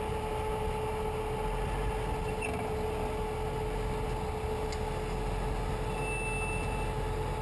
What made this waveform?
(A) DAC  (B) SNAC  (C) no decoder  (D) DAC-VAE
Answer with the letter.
C